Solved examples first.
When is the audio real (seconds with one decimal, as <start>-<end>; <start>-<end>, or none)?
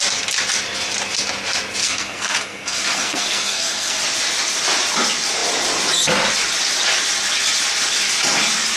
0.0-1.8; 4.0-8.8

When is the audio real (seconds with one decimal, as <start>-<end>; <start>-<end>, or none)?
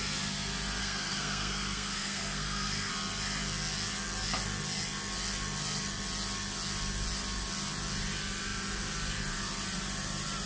0.0-0.8; 2.9-10.5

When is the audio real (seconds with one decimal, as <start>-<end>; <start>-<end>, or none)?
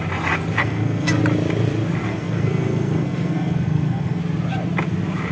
0.0-0.6; 1.2-2.1; 4.2-5.3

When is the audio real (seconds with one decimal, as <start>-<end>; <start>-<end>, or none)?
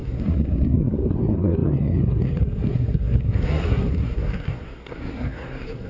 none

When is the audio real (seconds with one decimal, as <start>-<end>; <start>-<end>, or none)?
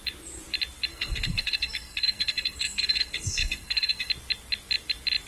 0.0-0.9; 4.1-5.3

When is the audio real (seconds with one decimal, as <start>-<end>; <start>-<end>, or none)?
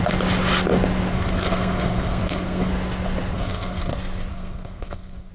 0.0-1.1; 2.7-3.3; 3.9-4.3